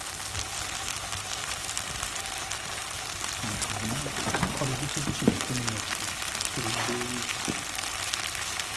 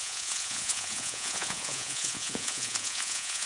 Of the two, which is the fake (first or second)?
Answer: second